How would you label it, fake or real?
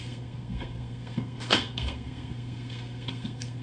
fake